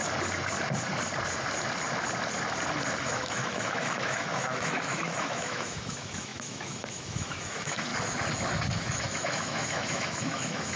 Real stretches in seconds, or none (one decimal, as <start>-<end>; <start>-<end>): 0.0-3.0; 7.9-8.7